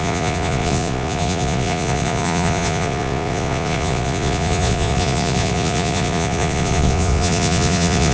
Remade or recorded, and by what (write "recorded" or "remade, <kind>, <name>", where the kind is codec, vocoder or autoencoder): remade, vocoder, Vocos